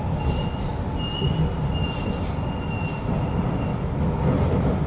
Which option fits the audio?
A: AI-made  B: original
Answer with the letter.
B